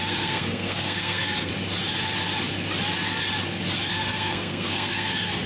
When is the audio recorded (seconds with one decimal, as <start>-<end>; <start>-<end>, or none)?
1.5-3.9